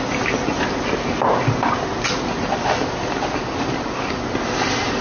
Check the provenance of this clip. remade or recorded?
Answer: recorded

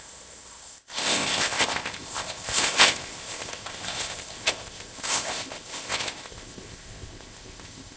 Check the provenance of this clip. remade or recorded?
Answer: remade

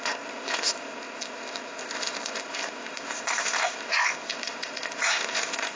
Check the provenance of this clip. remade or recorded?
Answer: remade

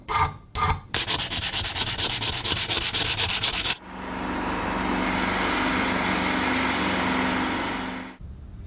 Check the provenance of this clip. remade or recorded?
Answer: recorded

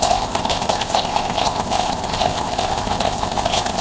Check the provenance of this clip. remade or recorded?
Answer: remade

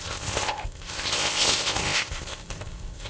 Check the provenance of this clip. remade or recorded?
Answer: remade